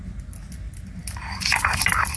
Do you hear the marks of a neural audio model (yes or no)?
no